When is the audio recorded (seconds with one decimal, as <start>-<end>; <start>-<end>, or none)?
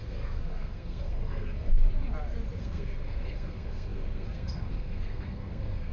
1.7-2.6